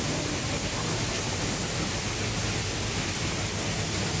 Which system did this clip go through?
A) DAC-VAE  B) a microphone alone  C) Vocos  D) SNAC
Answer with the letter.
B